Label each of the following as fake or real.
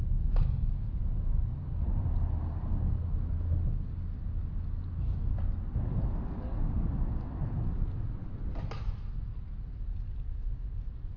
real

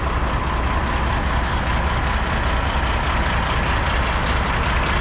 real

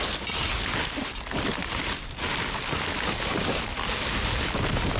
real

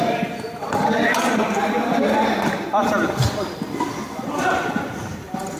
real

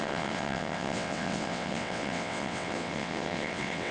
fake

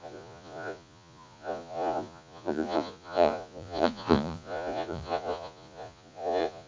fake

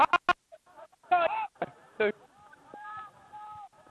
real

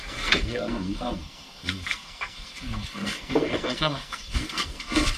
fake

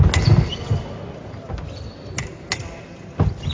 real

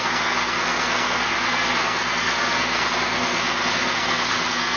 fake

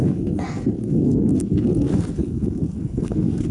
fake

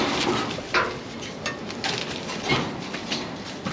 real